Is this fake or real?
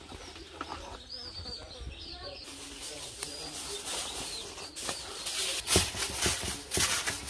real